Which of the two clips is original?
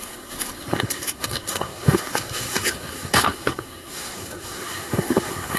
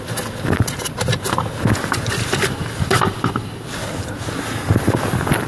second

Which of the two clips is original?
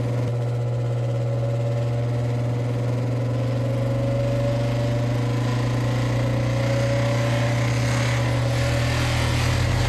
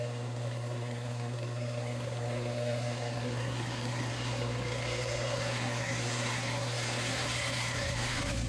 first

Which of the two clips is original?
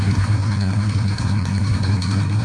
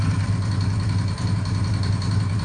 second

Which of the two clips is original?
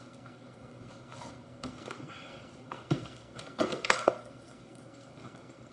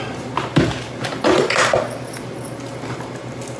second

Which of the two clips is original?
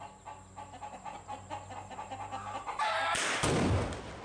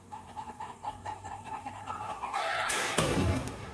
first